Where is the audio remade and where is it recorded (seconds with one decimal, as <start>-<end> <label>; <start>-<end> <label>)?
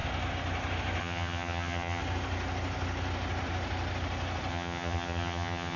0.0-1.0 recorded; 1.0-2.0 remade; 2.0-4.5 recorded; 4.5-5.8 remade